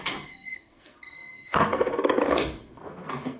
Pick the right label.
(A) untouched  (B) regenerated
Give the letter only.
B